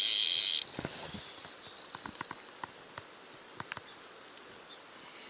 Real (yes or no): yes